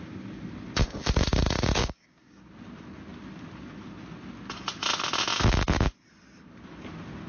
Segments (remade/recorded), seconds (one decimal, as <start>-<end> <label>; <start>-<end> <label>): 0.0-1.8 recorded; 1.8-2.5 remade; 2.5-7.3 recorded